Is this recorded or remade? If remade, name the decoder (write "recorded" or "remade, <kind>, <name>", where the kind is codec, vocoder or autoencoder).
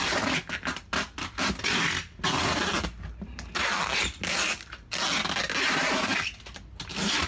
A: recorded